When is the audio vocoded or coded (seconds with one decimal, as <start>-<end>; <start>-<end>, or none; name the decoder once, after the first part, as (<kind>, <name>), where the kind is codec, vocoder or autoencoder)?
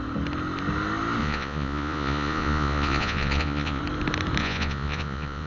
1.2-3.8 (vocoder, Vocos); 4.4-5.5